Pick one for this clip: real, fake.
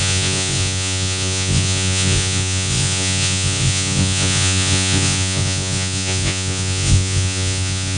fake